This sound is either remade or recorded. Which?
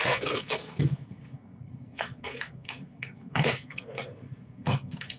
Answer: remade